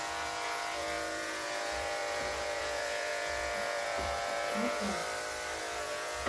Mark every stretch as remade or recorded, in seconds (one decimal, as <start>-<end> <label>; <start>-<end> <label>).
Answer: 0.0-5.0 remade; 5.0-5.6 recorded; 5.6-6.3 remade